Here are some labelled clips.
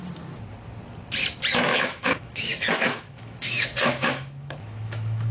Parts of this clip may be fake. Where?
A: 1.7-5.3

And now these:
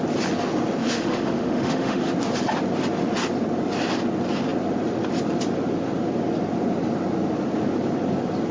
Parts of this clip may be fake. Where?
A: 0.8-2.1

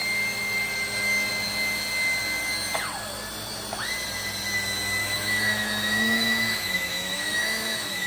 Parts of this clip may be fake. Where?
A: 5.0-8.1

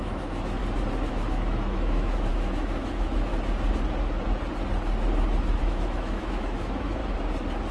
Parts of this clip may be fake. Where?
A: 0.0-0.6; 1.1-3.3; 5.6-7.0

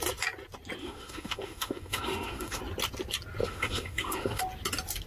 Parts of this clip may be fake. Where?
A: 0.8-2.6; 3.4-4.4

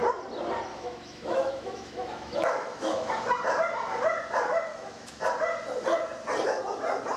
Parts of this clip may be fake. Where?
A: 0.7-3.1; 4.7-5.2